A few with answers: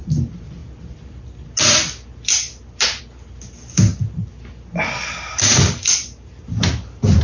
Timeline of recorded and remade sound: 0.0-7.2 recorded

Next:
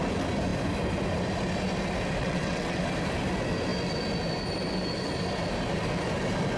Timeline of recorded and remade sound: 0.0-2.2 recorded; 2.2-2.8 remade; 2.8-6.6 recorded

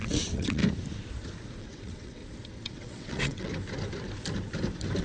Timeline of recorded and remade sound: 0.0-0.6 remade; 0.6-1.6 recorded; 1.6-2.2 remade; 2.2-2.7 recorded; 2.7-3.5 remade; 3.5-5.0 recorded

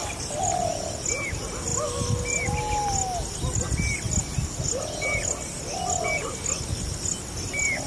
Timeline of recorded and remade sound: 0.0-7.9 recorded

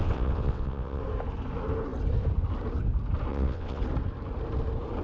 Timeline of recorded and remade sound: 0.0-1.0 remade; 1.0-3.3 recorded; 3.3-3.8 remade; 3.8-5.0 recorded

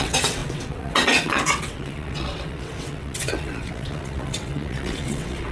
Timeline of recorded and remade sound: 0.0-5.5 remade